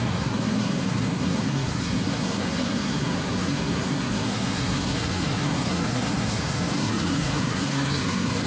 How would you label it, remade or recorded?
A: remade